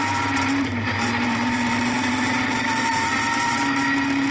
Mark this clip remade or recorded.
remade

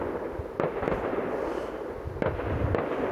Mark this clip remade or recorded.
recorded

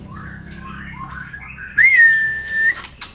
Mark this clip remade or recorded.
remade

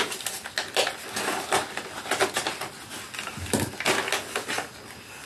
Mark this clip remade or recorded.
recorded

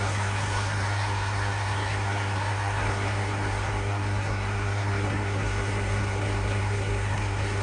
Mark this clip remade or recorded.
remade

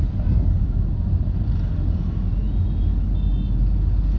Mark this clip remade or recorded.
recorded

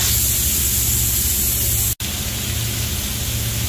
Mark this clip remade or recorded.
recorded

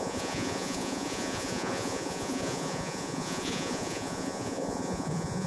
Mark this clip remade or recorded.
remade